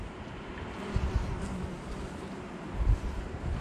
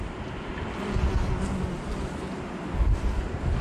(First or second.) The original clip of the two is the second